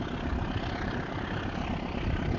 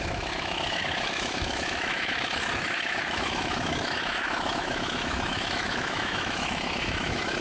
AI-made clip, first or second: second